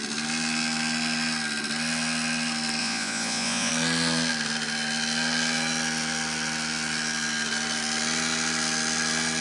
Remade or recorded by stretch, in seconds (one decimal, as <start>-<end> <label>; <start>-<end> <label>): 0.0-2.8 recorded; 2.8-3.7 remade; 3.7-9.4 recorded